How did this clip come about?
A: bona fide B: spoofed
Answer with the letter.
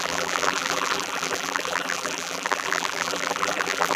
B